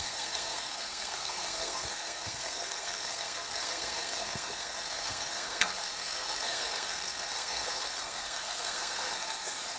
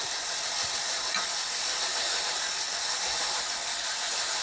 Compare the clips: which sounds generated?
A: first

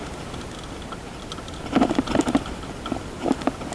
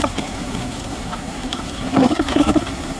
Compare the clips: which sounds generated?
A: second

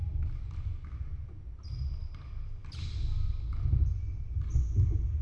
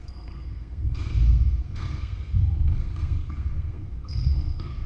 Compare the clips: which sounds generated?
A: second